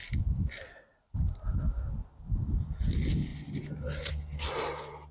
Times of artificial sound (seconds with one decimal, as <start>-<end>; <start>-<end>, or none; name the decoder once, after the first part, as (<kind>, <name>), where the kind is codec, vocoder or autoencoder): none